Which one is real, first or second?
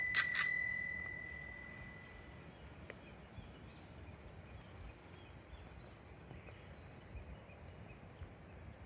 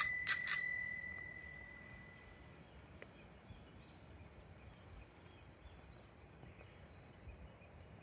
first